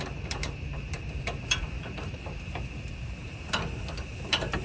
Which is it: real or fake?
fake